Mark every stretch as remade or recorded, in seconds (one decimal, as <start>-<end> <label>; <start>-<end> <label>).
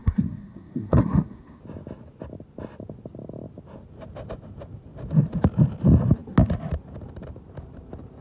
0.0-1.6 remade; 1.6-8.2 recorded